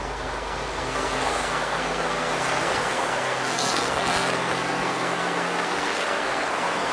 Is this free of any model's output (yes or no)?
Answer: no